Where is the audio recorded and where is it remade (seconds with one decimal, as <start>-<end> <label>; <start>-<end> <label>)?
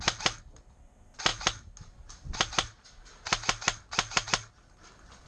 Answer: 0.0-5.3 recorded